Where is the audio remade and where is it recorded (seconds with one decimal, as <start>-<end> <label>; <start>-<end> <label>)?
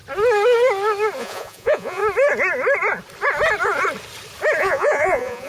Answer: 0.0-1.2 recorded; 1.2-2.0 remade; 2.0-4.6 recorded; 4.6-5.5 remade